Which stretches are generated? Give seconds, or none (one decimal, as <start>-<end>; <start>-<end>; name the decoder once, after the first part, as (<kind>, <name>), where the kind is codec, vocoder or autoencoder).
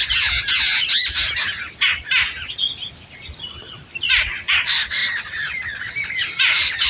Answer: 4.1-6.9 (vocoder, BigVGAN v2)